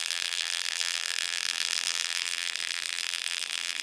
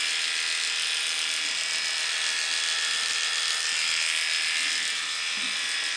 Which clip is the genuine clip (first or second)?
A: second